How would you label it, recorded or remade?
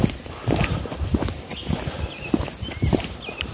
recorded